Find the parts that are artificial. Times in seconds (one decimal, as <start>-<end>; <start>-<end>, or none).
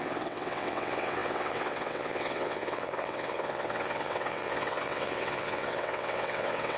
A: 0.0-6.8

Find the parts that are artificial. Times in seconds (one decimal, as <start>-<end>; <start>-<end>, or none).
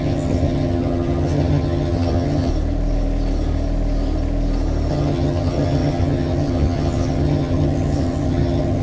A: 0.0-2.5; 4.9-8.8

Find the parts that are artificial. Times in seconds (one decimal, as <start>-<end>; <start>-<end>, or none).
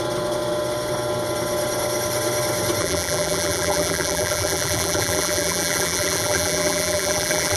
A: 2.8-7.6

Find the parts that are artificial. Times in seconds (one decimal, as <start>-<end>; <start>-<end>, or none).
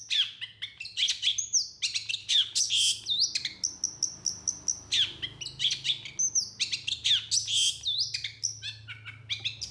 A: 2.2-2.7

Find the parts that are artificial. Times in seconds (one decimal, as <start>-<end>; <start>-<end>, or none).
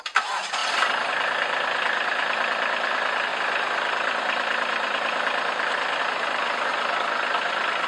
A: 0.6-1.1; 3.3-6.0